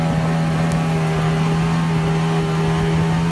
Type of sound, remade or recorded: recorded